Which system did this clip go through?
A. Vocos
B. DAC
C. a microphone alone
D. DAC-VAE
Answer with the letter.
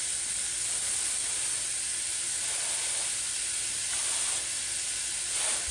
C